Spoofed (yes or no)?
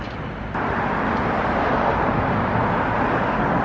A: no